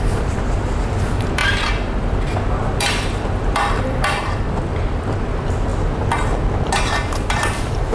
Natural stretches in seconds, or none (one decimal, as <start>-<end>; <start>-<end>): 1.4-2.8; 5.7-6.8